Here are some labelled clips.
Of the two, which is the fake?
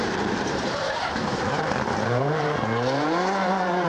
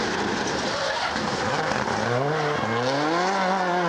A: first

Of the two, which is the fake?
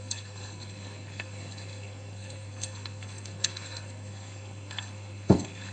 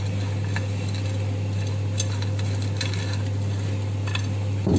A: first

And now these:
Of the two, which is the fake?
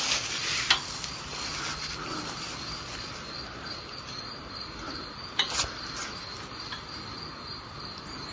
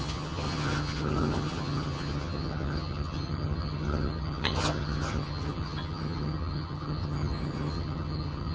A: second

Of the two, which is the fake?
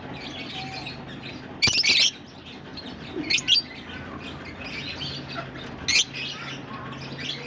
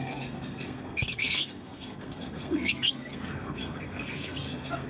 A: second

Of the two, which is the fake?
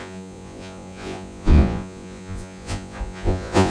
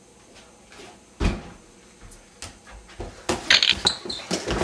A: first